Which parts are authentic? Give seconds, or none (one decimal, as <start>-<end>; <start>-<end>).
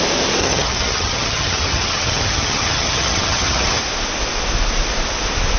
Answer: 0.0-0.4; 3.8-5.6